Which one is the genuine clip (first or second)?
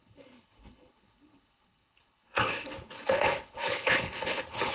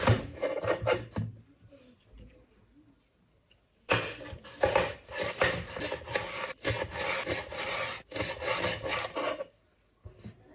second